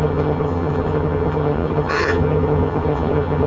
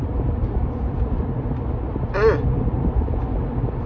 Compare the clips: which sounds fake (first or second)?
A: first